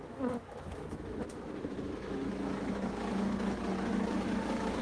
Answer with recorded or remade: remade